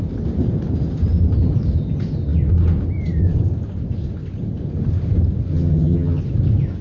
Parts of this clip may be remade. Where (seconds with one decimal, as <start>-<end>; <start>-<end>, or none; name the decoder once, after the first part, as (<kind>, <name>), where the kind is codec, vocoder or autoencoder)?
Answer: 5.5-6.2 (vocoder, HiFi-GAN)